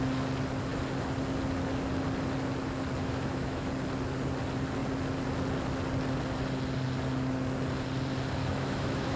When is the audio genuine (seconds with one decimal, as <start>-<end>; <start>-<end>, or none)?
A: 0.0-3.0; 3.7-8.4